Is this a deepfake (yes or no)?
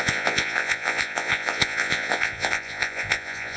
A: yes